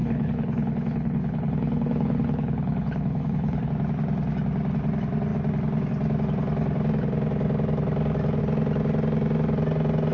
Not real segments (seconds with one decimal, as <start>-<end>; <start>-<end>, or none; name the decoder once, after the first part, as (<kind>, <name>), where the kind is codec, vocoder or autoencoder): 0.0-3.7 (codec, HILCodec)